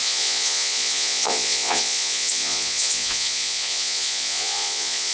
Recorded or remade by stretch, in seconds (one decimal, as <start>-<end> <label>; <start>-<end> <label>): 0.0-5.1 remade